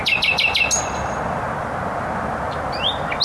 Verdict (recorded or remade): recorded